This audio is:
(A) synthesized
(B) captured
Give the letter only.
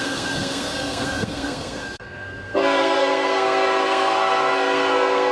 A